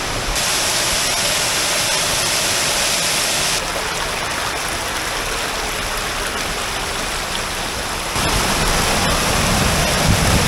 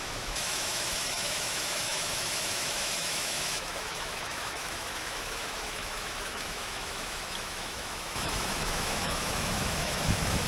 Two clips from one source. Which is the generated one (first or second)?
second